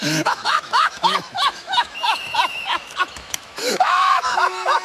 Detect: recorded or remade remade